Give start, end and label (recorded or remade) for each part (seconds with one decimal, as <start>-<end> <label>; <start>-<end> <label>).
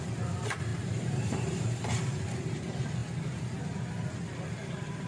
0.0-0.7 recorded; 0.7-1.6 remade; 1.6-5.1 recorded